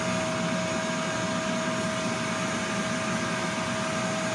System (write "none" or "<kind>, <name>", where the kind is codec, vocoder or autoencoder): none